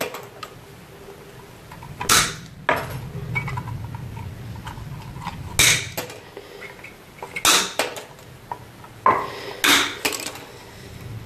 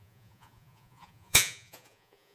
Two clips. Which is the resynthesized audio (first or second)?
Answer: second